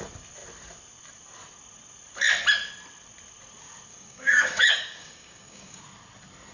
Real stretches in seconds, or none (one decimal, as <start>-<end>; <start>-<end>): 0.0-3.9; 5.8-6.5